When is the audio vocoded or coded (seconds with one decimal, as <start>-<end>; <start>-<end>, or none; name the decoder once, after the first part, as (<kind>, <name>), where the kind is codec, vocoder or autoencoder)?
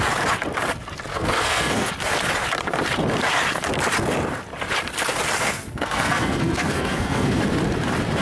1.1-1.9 (codec, SNAC); 5.4-7.4